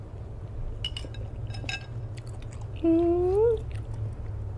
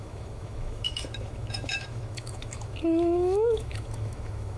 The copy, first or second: second